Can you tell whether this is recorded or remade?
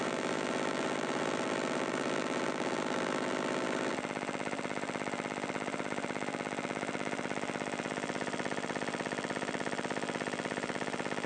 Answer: remade